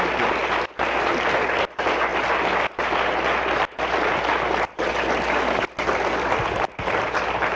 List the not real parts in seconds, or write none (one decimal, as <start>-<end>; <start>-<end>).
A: none